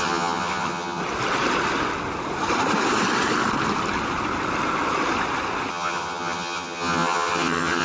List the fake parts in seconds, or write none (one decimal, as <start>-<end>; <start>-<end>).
0.0-1.0; 5.7-7.8